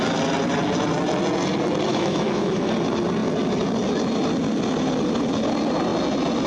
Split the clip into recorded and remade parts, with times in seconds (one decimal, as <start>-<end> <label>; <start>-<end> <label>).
0.0-1.9 recorded; 1.9-2.7 remade; 2.7-6.5 recorded